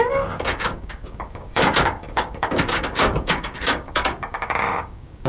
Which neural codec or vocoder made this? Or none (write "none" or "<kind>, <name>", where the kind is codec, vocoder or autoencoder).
codec, DAC